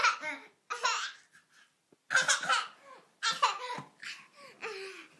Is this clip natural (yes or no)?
yes